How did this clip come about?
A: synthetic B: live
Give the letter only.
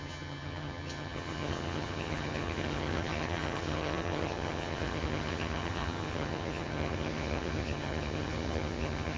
A